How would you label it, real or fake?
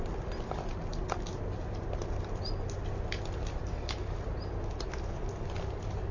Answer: real